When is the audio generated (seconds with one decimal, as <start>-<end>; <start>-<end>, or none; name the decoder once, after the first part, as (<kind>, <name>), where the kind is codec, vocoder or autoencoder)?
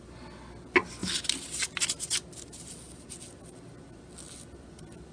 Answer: none